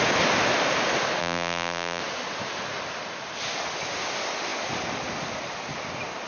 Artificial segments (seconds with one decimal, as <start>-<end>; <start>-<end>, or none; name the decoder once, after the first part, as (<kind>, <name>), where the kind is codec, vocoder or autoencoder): 1.2-2.0 (vocoder, BigVGAN v2)